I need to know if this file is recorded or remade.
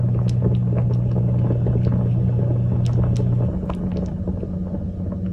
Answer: recorded